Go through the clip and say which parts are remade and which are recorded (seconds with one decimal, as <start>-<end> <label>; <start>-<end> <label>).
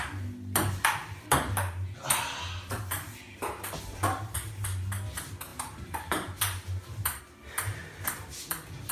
0.0-5.5 recorded; 5.5-7.2 remade; 7.2-8.9 recorded